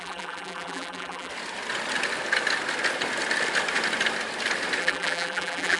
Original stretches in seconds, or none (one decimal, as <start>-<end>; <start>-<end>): 1.3-4.8